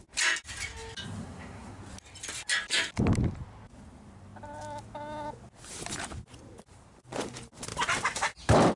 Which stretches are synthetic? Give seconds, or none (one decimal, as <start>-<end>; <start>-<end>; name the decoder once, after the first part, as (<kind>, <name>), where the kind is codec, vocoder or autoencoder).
1.2-1.8 (codec, SNAC)